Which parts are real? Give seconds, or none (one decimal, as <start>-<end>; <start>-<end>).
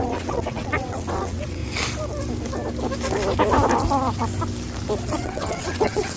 1.6-5.1